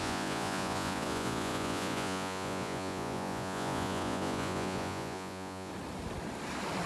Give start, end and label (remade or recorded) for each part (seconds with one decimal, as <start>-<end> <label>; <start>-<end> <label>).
0.0-5.7 remade; 5.7-6.9 recorded